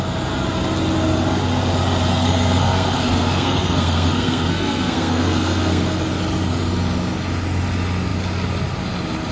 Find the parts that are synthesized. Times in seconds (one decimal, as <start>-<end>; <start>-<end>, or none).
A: 2.1-6.0